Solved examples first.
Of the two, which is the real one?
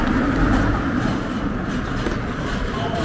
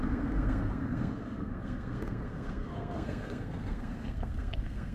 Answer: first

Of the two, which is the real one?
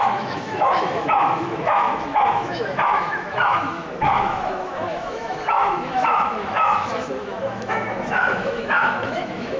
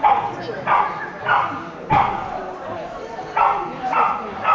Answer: second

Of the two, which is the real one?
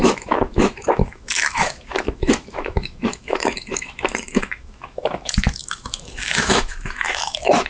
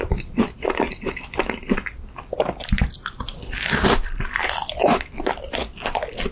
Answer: second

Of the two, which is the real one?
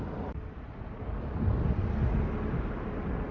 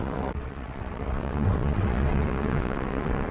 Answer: first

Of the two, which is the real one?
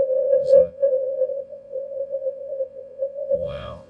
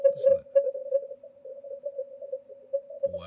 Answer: second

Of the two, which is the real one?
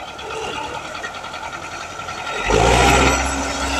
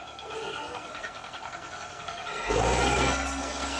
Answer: first